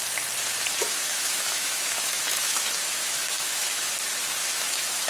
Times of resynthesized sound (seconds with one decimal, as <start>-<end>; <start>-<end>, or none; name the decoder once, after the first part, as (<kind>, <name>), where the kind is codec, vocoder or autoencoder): 0.8-3.9 (autoencoder, DAC-VAE); 4.4-5.1